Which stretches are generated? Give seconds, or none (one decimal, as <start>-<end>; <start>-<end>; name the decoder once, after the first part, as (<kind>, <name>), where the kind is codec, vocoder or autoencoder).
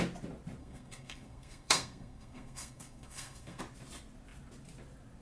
0.6-3.6 (codec, SNAC)